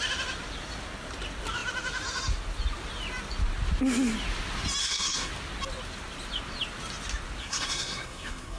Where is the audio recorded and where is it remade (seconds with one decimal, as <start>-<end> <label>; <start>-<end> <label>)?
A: 0.0-4.8 recorded; 4.8-5.3 remade; 5.3-7.4 recorded; 7.4-8.6 remade